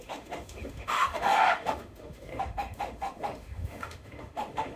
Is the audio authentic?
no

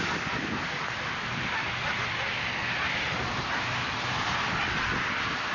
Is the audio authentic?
yes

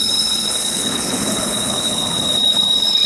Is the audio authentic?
no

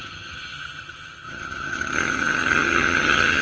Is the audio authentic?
no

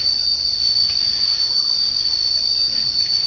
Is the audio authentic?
yes